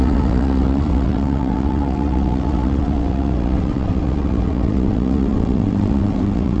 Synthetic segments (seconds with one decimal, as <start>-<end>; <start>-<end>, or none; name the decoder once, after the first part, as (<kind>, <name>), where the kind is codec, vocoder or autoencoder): 0.0-6.6 (vocoder, WaveNeXt)